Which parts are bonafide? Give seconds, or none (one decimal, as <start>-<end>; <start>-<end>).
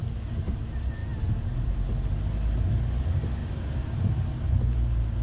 0.0-3.4; 4.3-5.2